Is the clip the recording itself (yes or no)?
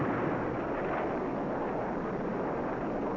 yes